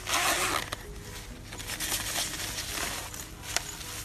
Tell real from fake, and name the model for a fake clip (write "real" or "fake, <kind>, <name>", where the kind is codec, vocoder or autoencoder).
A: real